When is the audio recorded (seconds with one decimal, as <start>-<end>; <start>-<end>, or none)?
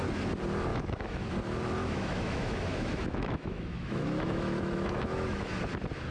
0.0-0.7; 1.3-1.8; 5.5-6.1